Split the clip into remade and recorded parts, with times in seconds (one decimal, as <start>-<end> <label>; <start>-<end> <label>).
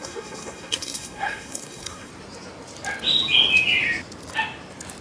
0.0-2.1 remade; 2.1-5.0 recorded